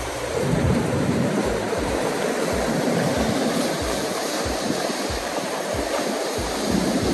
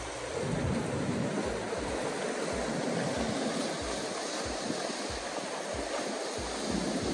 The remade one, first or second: first